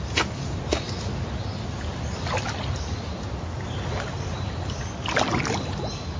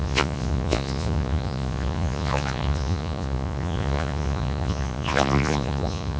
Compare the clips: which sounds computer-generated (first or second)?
second